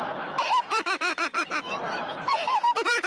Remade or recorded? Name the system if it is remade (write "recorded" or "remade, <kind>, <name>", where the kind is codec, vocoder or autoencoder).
remade, autoencoder, DAC-VAE